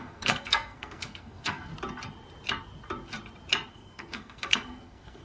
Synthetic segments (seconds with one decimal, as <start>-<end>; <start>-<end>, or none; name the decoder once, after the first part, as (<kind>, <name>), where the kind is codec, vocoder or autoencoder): 0.0-1.7 (codec, SNAC); 3.7-5.2